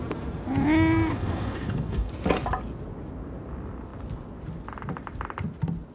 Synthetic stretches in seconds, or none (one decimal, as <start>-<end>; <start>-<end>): 1.1-2.1